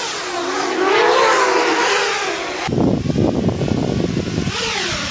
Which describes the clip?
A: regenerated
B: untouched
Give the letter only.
B